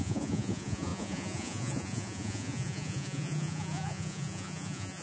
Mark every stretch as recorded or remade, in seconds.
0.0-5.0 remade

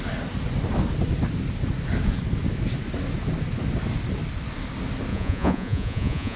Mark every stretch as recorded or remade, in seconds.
0.0-5.1 recorded; 5.1-6.4 remade

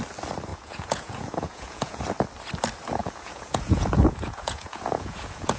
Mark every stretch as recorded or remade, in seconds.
0.0-0.5 recorded; 0.5-2.0 remade; 2.0-3.0 recorded; 3.0-5.6 remade